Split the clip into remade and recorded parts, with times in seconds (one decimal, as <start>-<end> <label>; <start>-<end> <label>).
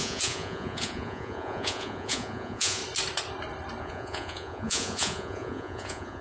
0.0-2.8 remade; 2.8-3.8 recorded; 3.8-6.2 remade